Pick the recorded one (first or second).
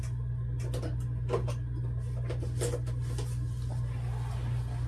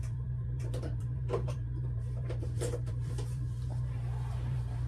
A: first